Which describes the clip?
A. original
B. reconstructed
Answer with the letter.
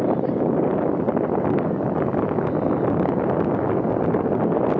A